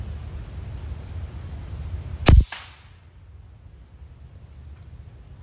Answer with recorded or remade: recorded